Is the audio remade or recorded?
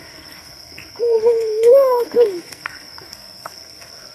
remade